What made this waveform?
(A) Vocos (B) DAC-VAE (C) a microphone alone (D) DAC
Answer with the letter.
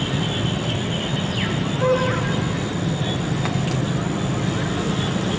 C